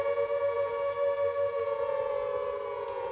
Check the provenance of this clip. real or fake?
fake